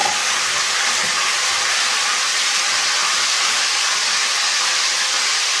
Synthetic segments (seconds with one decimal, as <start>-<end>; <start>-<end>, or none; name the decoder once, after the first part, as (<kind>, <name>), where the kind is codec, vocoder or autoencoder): none

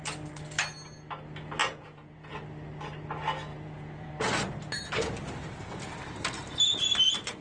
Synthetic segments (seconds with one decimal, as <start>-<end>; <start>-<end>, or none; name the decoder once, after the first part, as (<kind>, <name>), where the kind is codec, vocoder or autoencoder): 1.6-2.3 (vocoder, Vocos); 3.5-4.1

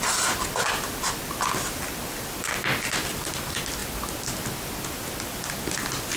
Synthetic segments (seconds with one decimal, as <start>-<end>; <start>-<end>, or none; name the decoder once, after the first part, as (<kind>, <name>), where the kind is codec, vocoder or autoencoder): none

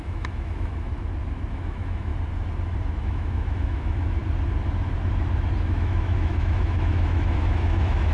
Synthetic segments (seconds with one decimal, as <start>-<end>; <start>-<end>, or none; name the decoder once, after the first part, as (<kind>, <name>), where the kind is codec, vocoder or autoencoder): 0.0-0.9 (autoencoder, DAC-VAE); 1.5-2.1; 3.0-4.2; 5.6-8.1

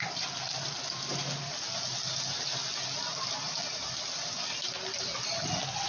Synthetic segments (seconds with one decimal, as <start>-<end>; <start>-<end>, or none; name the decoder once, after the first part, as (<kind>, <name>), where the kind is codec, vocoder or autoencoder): none

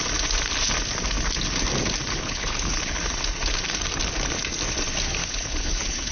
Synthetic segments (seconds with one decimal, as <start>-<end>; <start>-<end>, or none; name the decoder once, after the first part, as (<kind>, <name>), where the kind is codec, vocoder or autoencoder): 2.1-3.0 (codec, HILCodec); 5.2-6.1

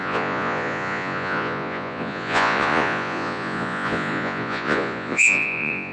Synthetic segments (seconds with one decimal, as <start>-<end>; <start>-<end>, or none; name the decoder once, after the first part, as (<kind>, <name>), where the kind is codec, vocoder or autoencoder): 0.0-5.9 (vocoder, Vocos)

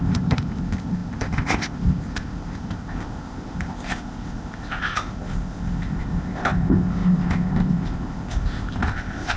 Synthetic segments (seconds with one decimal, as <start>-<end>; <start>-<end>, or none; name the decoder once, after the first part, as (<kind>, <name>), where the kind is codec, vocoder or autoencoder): 0.0-9.4 (codec, ZipCodec)